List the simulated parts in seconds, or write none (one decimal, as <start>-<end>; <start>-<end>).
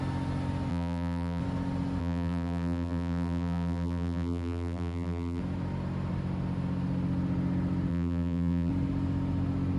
0.7-1.4; 2.0-5.4; 7.9-8.7